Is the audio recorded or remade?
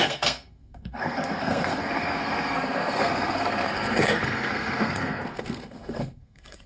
remade